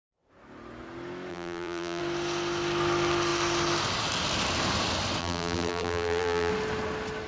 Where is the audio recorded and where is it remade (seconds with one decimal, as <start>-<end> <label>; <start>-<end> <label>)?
0.0-1.3 recorded; 1.3-2.0 remade; 2.0-5.2 recorded; 5.2-6.5 remade; 6.5-7.3 recorded